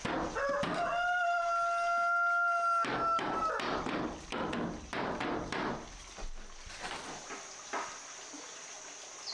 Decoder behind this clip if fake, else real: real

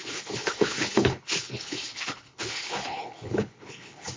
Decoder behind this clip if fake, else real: fake, codec, HILCodec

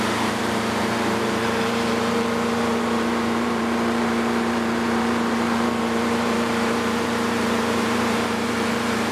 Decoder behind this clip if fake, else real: fake, vocoder, BigVGAN v2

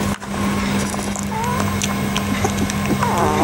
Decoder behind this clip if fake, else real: real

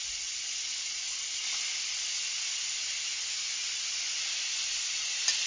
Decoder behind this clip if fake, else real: real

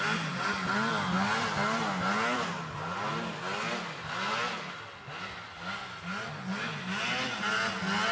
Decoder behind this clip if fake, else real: real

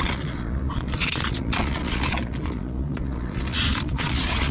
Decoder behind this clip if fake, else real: fake, vocoder, Vocos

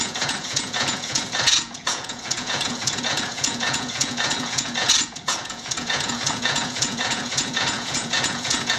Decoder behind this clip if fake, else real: fake, vocoder, Vocos